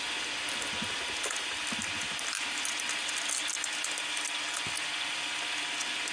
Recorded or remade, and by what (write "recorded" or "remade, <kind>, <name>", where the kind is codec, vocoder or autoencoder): recorded